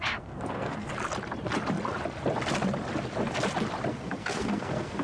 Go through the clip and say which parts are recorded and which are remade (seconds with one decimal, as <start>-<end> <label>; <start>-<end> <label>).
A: 0.0-0.9 remade; 0.9-3.9 recorded; 3.9-5.0 remade